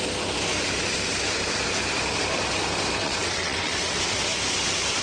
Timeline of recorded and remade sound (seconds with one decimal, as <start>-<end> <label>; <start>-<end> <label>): 0.0-3.0 recorded; 3.0-4.0 remade; 4.0-5.0 recorded